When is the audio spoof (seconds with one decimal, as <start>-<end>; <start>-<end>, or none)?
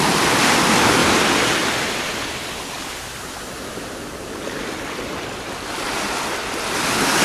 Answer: 1.0-2.1